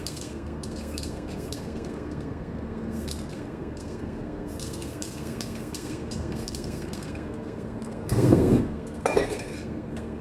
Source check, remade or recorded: remade